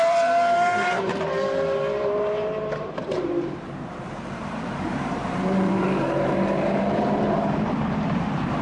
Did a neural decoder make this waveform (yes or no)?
yes